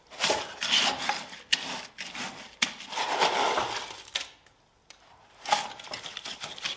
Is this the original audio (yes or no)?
yes